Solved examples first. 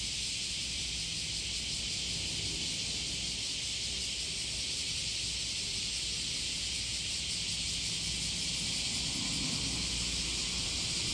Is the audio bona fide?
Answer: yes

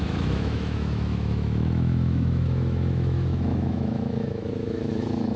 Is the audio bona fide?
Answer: no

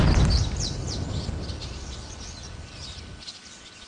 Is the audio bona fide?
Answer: yes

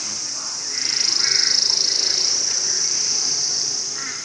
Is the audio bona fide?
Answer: no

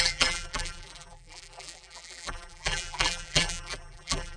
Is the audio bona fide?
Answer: no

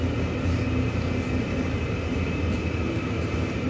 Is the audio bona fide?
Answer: yes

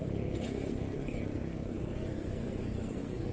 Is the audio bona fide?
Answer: no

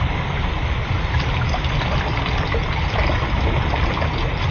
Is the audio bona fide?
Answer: yes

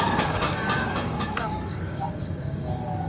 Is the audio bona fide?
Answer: no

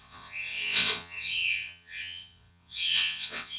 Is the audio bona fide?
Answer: no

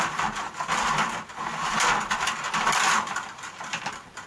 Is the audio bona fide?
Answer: no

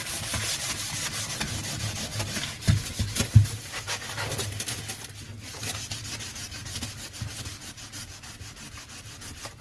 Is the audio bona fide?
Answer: yes